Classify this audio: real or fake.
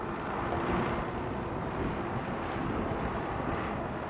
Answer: real